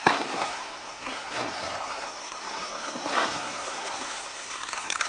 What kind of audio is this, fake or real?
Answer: fake